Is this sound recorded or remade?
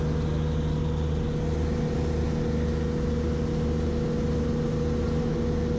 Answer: recorded